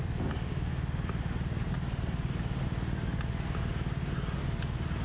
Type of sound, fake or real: real